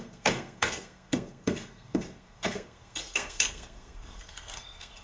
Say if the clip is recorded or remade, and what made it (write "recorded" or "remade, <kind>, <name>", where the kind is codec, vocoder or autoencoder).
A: remade, codec, SNAC